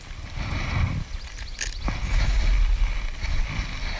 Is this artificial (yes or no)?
no